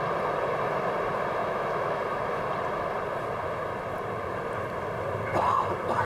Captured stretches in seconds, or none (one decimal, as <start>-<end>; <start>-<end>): 0.0-1.4; 2.0-6.1